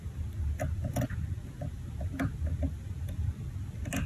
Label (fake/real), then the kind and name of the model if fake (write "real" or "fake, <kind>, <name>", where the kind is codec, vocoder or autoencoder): real